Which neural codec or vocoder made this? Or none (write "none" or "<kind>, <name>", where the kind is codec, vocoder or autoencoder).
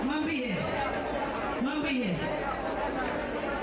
none